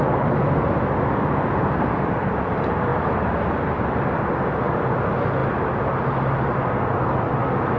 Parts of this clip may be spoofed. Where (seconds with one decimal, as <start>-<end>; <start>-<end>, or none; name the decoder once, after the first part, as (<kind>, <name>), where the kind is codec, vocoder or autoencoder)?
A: none